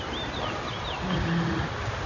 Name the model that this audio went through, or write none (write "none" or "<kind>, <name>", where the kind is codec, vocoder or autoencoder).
none